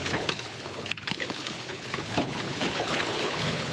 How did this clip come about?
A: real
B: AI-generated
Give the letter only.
B